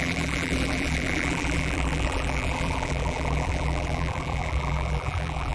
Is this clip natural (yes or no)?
no